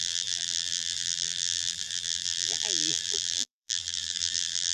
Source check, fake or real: fake